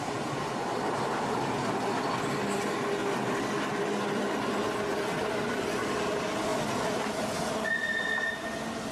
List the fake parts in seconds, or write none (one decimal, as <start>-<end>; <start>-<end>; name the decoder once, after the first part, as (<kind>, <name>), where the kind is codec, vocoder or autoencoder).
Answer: none